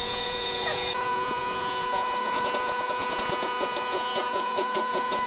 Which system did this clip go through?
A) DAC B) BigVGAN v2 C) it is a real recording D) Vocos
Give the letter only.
D